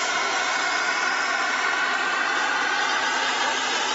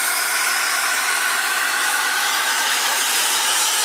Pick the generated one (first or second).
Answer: second